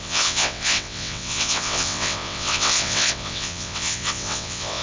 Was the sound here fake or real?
fake